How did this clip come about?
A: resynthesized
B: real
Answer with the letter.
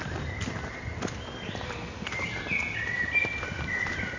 B